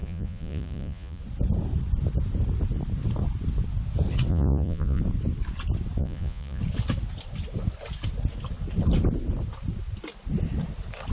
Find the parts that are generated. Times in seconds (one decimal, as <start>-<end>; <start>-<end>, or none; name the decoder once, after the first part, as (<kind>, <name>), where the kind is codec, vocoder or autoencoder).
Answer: 0.0-1.2 (vocoder, Vocos); 4.3-5.0; 6.0-6.6